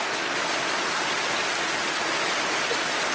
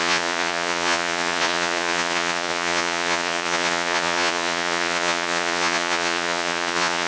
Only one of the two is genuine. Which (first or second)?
first